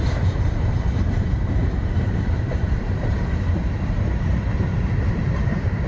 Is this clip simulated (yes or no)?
yes